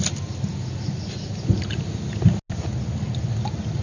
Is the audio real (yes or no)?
yes